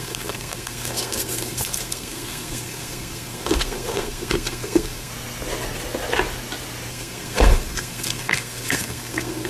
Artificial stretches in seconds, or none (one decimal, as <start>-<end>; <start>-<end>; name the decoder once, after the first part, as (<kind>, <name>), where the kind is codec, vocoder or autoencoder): 0.0-5.1 (codec, SNAC); 6.9-9.5